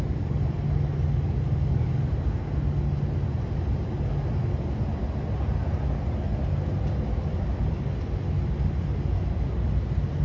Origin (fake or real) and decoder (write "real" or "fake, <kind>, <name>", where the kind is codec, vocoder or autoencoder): real